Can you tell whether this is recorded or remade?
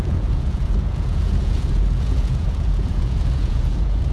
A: remade